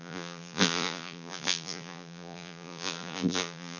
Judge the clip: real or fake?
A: fake